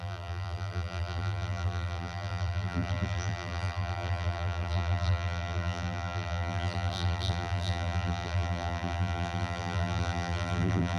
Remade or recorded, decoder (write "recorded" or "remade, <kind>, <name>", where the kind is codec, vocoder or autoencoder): remade, vocoder, BigVGAN v2